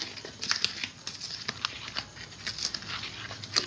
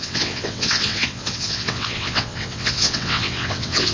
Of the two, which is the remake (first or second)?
second